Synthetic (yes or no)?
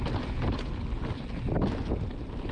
no